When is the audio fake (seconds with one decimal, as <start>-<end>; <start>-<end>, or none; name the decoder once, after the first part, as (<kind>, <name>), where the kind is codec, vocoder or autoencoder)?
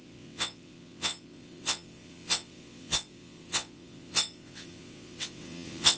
0.0-6.0 (vocoder, WaveNeXt)